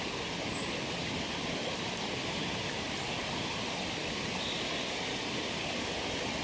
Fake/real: real